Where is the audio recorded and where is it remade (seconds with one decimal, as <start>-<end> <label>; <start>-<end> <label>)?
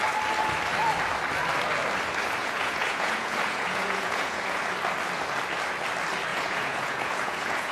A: 0.0-2.4 recorded; 2.4-4.6 remade; 4.6-6.3 recorded; 6.3-7.7 remade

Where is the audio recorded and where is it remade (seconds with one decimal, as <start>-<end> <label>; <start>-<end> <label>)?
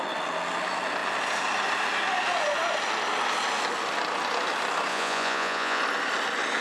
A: 0.0-4.9 recorded; 4.9-5.8 remade; 5.8-6.6 recorded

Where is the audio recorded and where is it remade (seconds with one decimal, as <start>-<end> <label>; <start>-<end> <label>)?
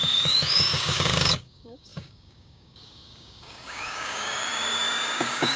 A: 0.0-5.6 remade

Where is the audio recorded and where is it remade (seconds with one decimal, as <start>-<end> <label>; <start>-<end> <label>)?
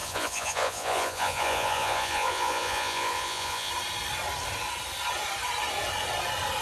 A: 0.0-3.7 remade; 3.7-6.6 recorded